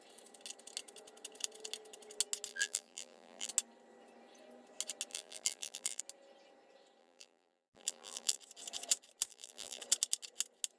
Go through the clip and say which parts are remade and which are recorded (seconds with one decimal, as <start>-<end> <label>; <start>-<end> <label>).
0.0-2.5 recorded; 2.5-3.5 remade; 3.5-5.1 recorded; 5.1-6.0 remade; 6.0-7.0 recorded; 7.0-8.4 remade; 8.4-9.3 recorded; 9.3-9.8 remade; 9.8-10.8 recorded